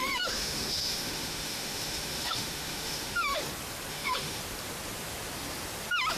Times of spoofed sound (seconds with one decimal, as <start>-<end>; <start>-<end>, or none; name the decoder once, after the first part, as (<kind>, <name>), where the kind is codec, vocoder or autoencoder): 0.0-3.4 (autoencoder, DAC-VAE); 3.9-4.4